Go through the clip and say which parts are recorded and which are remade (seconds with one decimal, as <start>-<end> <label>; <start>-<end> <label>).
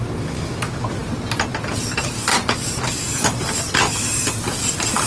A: 0.0-5.1 recorded